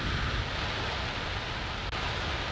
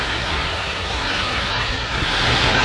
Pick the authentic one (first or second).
first